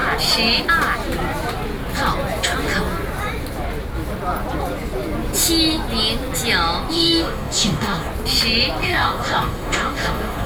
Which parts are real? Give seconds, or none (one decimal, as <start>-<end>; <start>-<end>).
0.0-6.9; 8.1-8.8